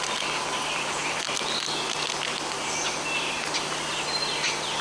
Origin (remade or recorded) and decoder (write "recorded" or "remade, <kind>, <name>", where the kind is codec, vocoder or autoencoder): recorded